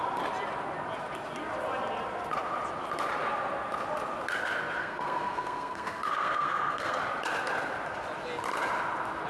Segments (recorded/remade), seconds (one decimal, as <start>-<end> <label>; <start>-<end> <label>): 0.0-4.8 recorded; 4.8-7.0 remade; 7.0-9.3 recorded